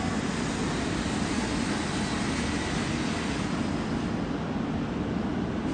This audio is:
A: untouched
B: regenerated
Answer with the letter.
A